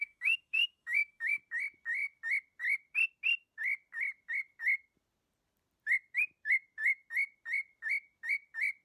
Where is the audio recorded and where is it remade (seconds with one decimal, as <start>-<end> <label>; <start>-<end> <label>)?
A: 0.0-1.4 remade; 1.4-8.8 recorded